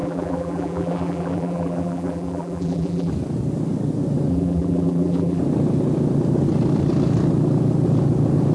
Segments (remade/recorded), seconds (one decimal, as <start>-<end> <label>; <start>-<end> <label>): 0.0-3.1 remade; 3.1-4.3 recorded; 4.3-5.4 remade; 5.4-8.5 recorded